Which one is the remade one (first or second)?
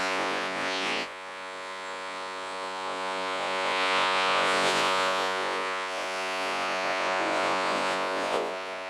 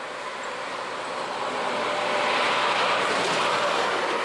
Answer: first